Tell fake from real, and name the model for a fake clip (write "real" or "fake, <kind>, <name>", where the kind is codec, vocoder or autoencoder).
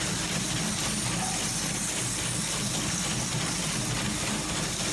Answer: real